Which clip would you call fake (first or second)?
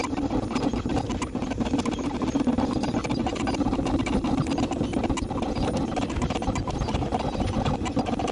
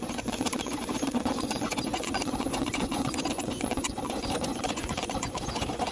second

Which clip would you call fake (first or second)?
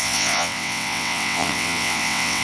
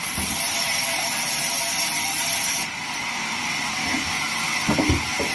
first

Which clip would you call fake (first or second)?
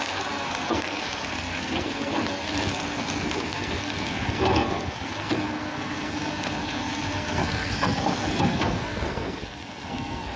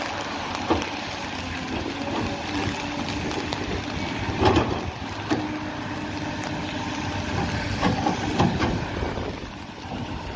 first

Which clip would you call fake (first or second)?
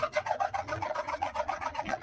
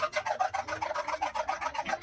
first